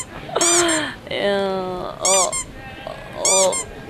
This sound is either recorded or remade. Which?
recorded